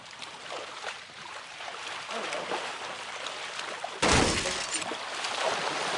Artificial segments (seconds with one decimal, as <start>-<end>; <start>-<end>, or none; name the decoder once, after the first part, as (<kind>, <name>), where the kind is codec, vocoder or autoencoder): 0.0-1.7 (vocoder, BigVGAN v2); 5.3-6.0